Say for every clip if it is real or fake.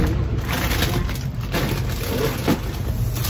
real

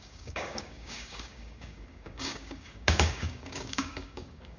fake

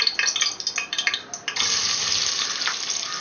fake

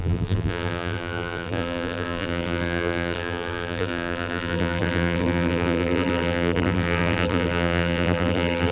fake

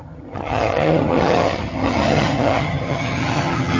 fake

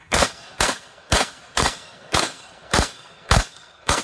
fake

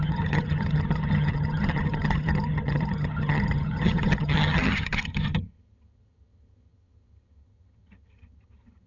fake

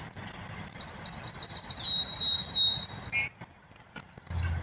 real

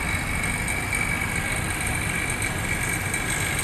real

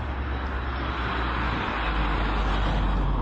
real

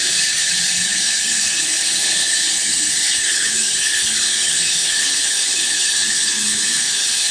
fake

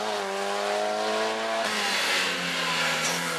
real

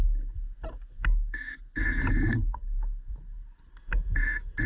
real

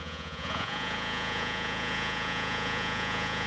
fake